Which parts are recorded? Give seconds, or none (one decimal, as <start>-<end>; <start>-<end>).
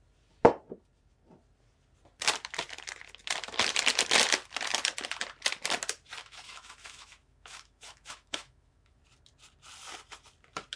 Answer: 0.0-6.2; 9.0-10.8